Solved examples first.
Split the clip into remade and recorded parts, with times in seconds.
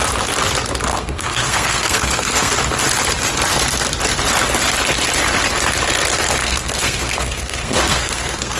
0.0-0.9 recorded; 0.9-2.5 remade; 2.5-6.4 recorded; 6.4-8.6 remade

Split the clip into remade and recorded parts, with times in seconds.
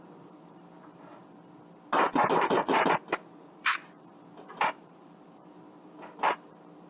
0.0-1.2 remade; 1.2-2.4 recorded; 2.4-6.9 remade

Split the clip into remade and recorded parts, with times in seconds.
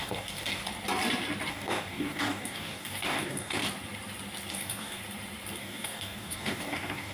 0.0-0.6 remade; 0.6-1.5 recorded; 1.5-3.6 remade; 3.6-4.5 recorded; 4.5-5.0 remade; 5.0-5.6 recorded; 5.6-7.1 remade